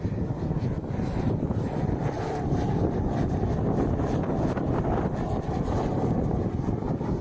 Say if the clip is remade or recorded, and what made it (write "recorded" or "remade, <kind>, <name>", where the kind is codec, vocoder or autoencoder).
recorded